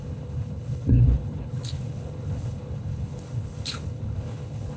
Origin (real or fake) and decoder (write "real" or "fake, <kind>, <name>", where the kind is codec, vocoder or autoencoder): fake, codec, HILCodec